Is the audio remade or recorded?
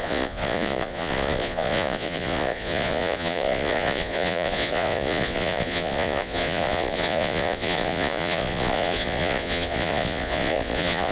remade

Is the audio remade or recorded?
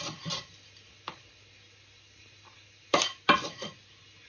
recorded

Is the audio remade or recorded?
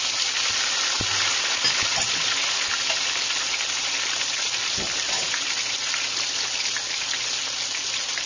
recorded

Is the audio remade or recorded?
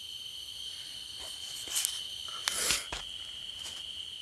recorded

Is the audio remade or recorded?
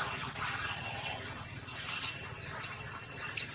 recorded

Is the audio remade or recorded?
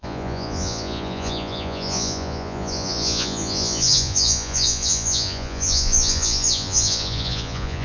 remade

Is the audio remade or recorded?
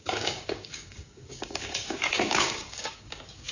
remade